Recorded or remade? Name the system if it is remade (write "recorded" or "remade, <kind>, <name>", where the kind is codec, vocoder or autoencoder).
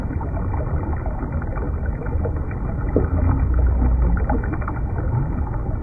recorded